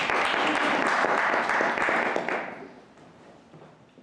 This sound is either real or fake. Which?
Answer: real